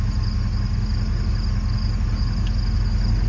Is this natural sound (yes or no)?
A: yes